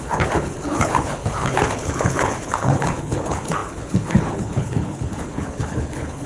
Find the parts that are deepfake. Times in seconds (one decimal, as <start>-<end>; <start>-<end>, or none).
0.0-6.3